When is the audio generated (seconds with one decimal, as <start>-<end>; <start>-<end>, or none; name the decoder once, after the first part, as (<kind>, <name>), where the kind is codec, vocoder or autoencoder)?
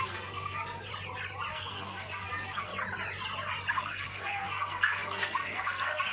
0.0-0.9 (codec, SNAC); 1.5-2.7; 3.7-6.1